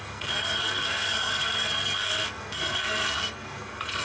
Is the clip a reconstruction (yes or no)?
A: yes